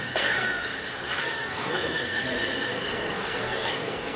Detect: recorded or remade remade